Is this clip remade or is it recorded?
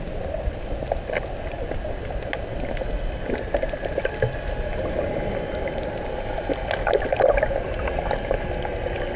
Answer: recorded